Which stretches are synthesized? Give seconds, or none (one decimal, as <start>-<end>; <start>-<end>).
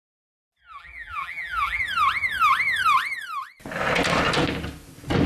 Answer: 0.6-1.8